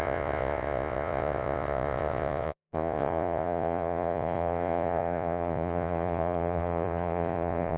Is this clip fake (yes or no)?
yes